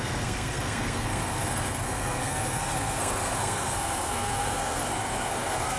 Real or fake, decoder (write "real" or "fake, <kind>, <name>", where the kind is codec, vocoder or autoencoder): fake, codec, SNAC